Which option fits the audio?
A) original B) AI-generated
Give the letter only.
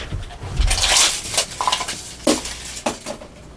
A